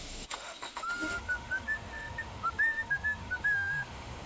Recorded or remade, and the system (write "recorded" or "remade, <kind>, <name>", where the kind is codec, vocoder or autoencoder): remade, autoencoder, DAC-VAE